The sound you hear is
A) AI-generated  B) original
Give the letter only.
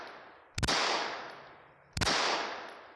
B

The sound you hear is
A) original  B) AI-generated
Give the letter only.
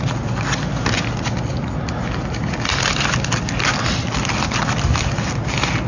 A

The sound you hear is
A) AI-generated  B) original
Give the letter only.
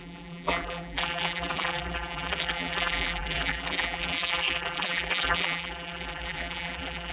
A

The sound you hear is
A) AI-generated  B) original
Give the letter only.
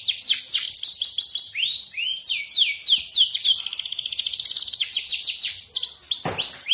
B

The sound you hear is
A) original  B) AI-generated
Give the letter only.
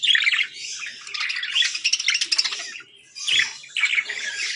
A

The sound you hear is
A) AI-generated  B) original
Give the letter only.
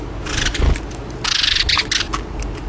B